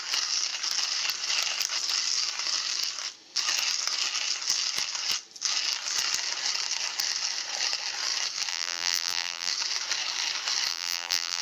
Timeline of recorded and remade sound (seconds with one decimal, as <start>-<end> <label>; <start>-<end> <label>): 0.0-8.5 recorded; 8.5-9.5 remade; 9.5-10.7 recorded; 10.7-11.4 remade